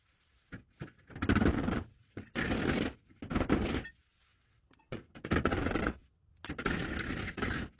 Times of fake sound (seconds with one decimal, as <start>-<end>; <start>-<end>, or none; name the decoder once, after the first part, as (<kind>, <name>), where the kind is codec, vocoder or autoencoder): 1.5-2.3 (vocoder, WaveNeXt); 4.1-6.2